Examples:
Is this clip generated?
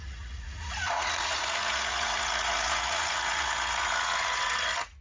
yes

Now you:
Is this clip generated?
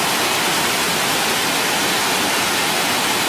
yes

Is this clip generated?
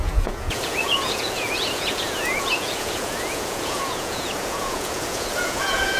yes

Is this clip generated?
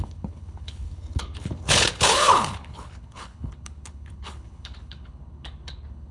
yes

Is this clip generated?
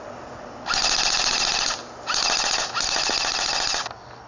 no